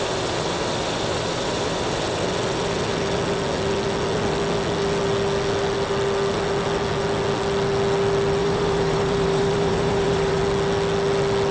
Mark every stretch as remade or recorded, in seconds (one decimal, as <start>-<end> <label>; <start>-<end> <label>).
0.0-8.4 recorded; 8.4-10.4 remade; 10.4-11.5 recorded